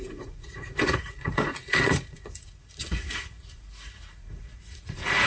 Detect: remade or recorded remade